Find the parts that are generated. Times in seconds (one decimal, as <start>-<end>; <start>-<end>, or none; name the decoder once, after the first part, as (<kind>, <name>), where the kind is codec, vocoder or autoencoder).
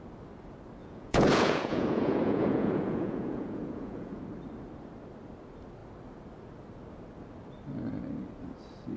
0.8-4.2 (vocoder, Vocos)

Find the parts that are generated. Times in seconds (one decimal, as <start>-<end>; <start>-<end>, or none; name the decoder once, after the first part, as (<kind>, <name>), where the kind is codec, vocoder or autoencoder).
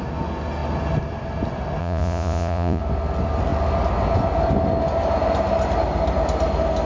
1.8-2.8 (vocoder, Vocos)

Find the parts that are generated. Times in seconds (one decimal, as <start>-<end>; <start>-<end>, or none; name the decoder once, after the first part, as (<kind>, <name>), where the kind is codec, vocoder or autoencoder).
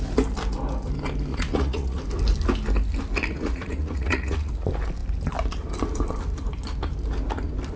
1.3-2.0 (vocoder, Vocos); 3.3-4.5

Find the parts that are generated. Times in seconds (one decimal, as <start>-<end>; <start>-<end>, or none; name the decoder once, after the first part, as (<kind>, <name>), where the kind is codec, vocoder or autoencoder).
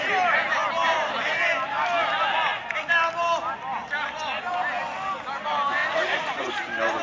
5.8-6.5 (vocoder, Vocos)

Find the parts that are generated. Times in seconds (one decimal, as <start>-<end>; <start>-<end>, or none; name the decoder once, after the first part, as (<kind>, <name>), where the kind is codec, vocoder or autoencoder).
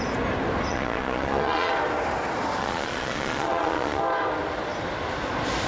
0.7-1.7 (vocoder, Vocos); 2.6-4.0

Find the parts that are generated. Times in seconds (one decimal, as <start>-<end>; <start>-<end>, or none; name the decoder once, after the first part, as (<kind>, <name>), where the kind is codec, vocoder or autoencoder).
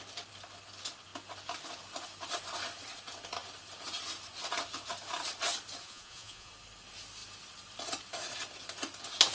5.8-6.5 (vocoder, Vocos)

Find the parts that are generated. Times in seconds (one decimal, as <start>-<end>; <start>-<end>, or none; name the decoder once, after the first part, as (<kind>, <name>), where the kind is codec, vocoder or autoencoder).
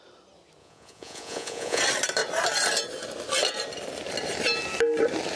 0.6-1.8 (vocoder, Vocos)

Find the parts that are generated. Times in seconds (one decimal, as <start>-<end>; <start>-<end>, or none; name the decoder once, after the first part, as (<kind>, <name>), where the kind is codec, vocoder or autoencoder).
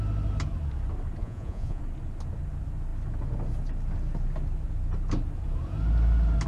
1.2-1.8 (vocoder, Vocos)